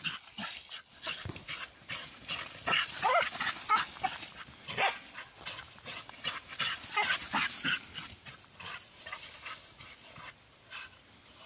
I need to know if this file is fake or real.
real